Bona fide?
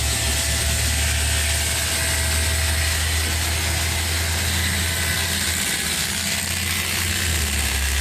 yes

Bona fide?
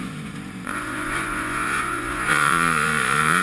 no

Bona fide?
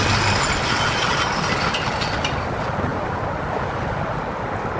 yes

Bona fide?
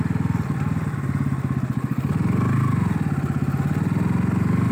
yes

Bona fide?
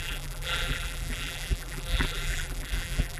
no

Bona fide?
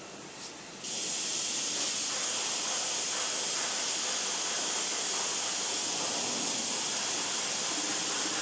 yes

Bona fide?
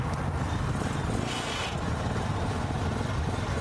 yes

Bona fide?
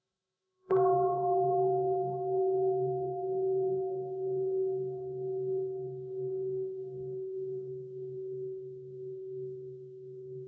no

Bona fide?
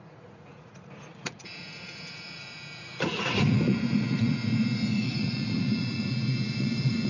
no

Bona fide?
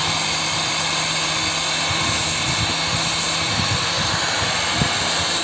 yes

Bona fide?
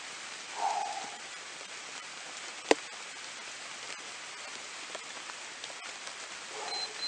yes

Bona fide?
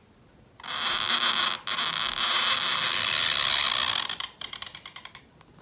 yes